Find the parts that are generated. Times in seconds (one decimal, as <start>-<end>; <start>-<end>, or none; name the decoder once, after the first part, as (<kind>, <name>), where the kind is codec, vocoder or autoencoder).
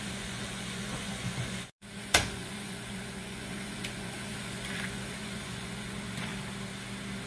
0.0-6.3 (vocoder, Vocos)